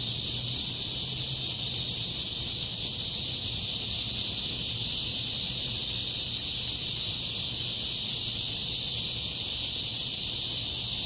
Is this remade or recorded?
recorded